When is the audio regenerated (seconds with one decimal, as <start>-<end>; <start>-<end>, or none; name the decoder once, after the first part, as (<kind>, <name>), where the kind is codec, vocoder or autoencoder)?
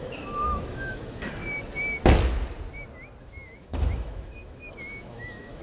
0.0-1.4 (autoencoder, DAC-VAE); 3.2-5.6